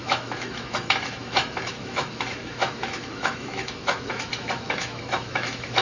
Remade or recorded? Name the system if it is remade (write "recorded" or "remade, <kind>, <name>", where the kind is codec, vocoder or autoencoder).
remade, autoencoder, DAC-VAE